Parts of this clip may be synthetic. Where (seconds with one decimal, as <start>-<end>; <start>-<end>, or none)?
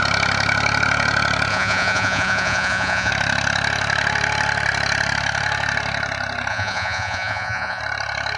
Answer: 1.5-3.1; 6.5-7.8